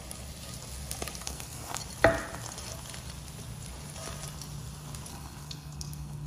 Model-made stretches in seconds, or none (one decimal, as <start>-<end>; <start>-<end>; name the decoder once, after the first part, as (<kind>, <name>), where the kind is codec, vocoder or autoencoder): 1.2-1.8 (codec, SNAC); 5.1-6.3